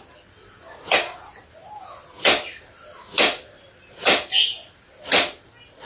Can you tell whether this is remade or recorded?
recorded